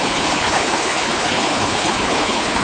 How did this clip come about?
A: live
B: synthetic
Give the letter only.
B